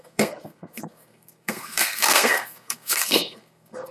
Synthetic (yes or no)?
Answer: yes